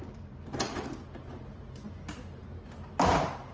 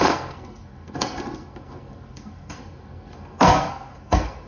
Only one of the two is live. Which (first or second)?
first